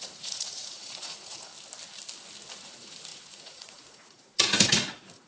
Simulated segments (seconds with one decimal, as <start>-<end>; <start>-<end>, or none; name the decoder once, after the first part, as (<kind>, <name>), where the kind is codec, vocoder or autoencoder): 0.0-1.5 (vocoder, Vocos); 2.5-5.3

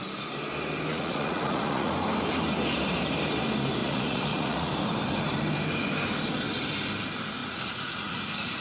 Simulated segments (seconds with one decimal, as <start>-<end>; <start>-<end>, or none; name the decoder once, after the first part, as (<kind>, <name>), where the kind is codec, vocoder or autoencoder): 0.9-1.9 (vocoder, Vocos); 3.8-4.7; 7.4-8.6